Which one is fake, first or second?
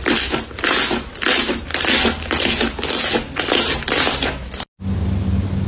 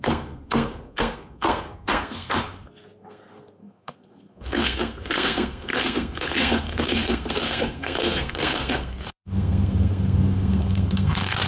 second